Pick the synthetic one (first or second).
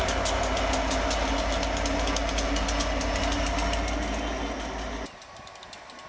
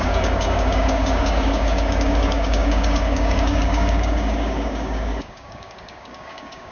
second